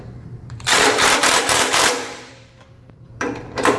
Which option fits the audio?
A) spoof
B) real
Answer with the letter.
A